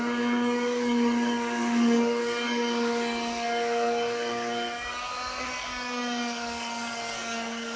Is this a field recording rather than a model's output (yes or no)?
no